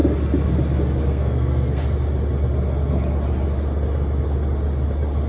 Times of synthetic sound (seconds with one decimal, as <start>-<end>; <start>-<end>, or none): 1.1-1.8